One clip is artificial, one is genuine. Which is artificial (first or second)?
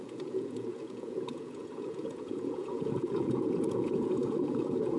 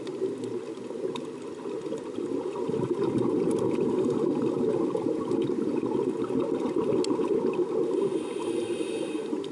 first